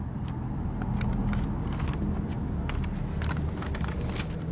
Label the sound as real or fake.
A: real